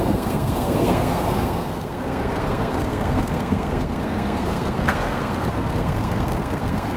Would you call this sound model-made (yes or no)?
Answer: yes